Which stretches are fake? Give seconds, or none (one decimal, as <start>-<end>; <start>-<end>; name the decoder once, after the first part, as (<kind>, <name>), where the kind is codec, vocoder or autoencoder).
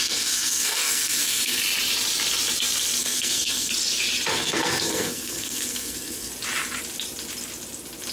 0.0-1.6 (codec, SNAC); 3.0-3.7; 4.3-6.3